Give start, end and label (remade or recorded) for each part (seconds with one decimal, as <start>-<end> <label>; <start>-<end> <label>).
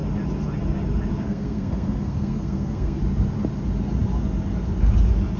0.0-1.1 recorded; 1.1-3.0 remade; 3.0-5.4 recorded